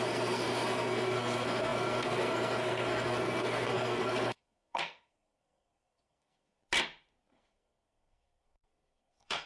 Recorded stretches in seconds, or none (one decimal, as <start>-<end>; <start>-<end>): 6.6-7.3